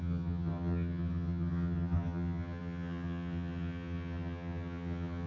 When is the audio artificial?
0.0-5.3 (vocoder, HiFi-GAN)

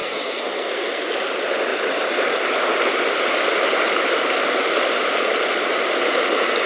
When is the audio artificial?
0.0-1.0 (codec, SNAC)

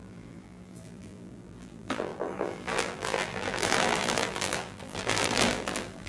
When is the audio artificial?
0.0-6.1 (vocoder, BigVGAN v2)